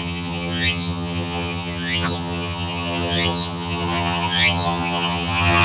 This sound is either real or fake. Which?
fake